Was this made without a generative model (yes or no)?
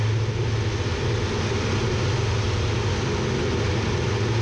yes